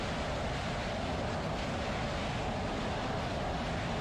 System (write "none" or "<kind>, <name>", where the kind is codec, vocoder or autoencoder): none